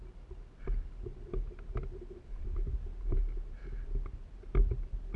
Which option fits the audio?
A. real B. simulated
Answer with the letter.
A